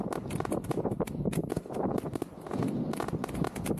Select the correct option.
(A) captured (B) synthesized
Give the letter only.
A